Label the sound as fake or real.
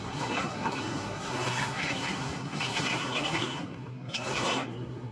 fake